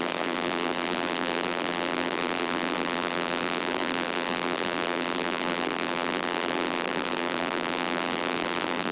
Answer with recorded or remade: remade